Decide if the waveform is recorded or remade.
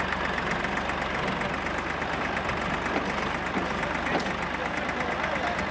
recorded